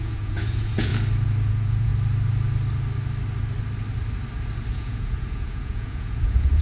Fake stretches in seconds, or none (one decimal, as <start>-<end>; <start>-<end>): 0.0-0.9; 1.5-1.9; 4.7-6.6